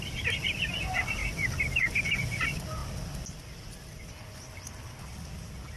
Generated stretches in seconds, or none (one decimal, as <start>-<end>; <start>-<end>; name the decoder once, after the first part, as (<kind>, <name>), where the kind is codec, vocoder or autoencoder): none